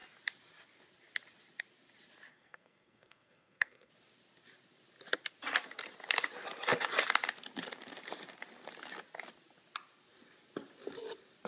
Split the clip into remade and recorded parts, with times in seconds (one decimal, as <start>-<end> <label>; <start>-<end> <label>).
0.0-2.3 recorded; 2.3-3.9 remade; 3.9-11.5 recorded